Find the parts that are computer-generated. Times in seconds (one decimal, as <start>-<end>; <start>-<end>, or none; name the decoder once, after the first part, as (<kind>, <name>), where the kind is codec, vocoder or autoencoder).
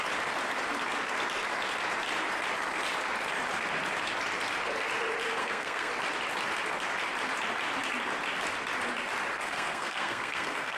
5.4-5.9 (codec, SNAC); 9.3-10.8